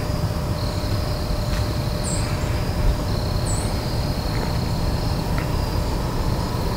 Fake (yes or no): no